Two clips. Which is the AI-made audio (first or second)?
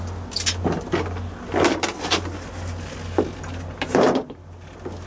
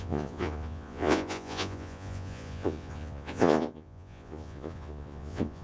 second